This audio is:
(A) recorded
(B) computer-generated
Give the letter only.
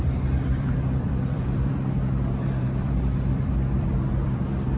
B